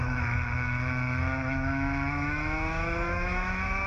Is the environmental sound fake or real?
fake